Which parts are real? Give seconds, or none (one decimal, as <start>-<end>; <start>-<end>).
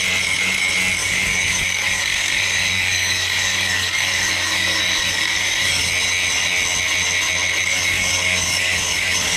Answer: 0.0-1.0; 5.8-7.7